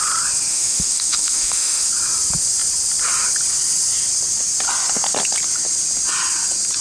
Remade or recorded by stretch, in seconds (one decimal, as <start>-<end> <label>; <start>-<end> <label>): 0.0-0.5 recorded; 0.5-1.9 remade; 1.9-6.8 recorded